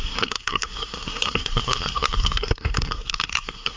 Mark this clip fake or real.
fake